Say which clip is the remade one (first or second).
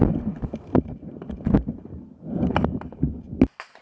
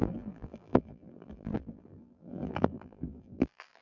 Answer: second